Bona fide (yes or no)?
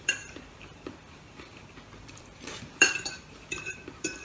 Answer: no